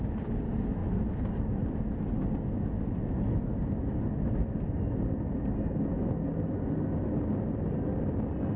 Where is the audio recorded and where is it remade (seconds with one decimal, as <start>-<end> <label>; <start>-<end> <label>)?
0.0-8.6 recorded